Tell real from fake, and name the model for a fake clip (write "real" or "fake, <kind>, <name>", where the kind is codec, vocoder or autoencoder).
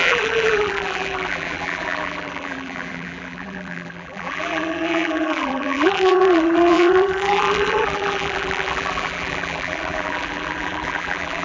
fake, vocoder, BigVGAN v2